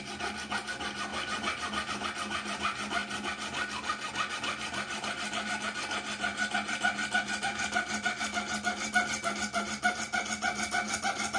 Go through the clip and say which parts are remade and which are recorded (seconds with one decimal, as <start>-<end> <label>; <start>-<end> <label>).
0.0-11.4 recorded